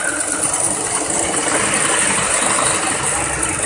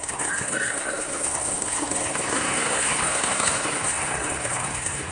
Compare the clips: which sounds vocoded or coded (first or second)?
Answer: second